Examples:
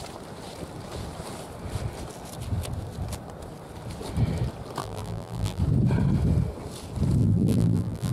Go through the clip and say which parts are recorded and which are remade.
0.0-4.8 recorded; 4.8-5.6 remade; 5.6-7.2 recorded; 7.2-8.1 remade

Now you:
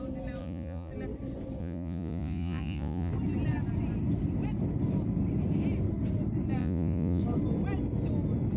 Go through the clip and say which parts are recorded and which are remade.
0.0-0.4 recorded; 0.4-0.9 remade; 0.9-1.6 recorded; 1.6-3.1 remade; 3.1-6.6 recorded; 6.6-7.2 remade; 7.2-8.6 recorded

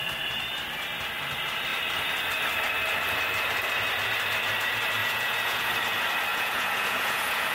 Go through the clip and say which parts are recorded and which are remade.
0.0-5.0 recorded; 5.0-5.7 remade; 5.7-6.3 recorded; 6.3-7.5 remade

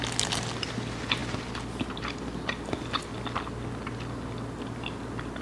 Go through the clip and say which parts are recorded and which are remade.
0.0-5.4 recorded